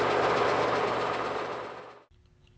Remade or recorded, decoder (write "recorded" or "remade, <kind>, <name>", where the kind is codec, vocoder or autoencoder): recorded